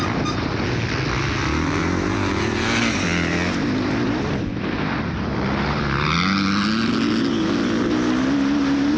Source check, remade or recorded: recorded